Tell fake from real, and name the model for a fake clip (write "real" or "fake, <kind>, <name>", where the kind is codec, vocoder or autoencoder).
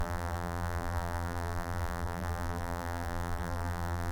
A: fake, vocoder, BigVGAN v2